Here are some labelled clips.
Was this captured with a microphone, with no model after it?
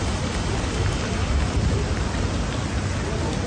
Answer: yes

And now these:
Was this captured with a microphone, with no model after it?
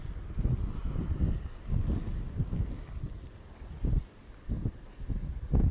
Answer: yes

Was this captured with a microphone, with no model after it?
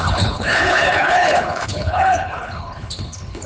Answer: no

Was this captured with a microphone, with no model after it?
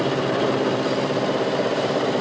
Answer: yes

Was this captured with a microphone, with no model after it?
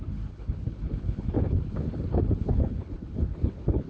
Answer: no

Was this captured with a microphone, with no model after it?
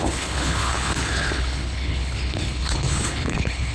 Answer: no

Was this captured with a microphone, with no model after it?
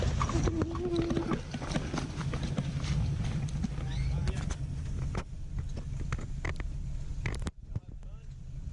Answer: yes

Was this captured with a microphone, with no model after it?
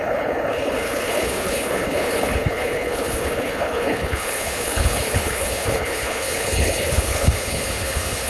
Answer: no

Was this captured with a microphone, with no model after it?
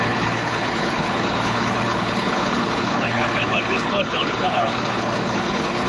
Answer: no